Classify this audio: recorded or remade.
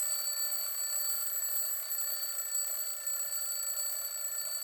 recorded